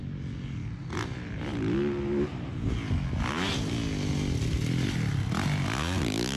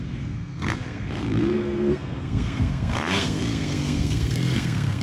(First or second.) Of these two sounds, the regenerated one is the second